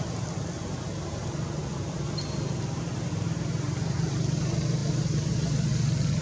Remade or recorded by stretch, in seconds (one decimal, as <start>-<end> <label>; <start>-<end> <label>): 0.0-6.2 recorded